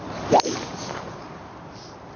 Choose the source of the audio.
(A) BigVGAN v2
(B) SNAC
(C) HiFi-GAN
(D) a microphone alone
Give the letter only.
D